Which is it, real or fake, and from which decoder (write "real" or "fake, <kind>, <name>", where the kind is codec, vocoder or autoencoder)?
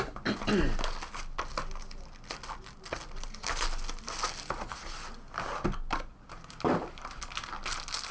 real